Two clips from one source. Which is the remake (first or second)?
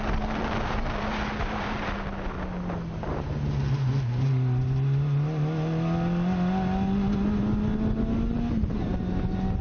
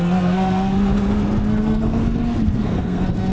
second